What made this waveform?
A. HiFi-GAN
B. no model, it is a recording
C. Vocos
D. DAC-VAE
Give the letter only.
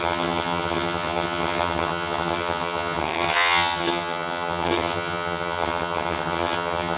A